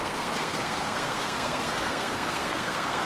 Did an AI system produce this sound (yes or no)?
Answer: yes